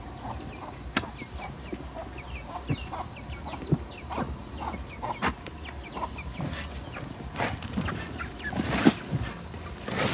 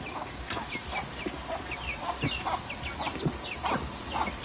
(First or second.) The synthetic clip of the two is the second